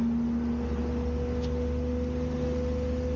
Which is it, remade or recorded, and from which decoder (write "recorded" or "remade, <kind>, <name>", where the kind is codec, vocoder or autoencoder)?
recorded